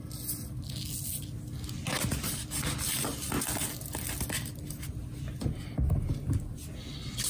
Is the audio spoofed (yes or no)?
no